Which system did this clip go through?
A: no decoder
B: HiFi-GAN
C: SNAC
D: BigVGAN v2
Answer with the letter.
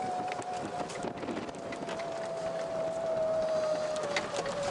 A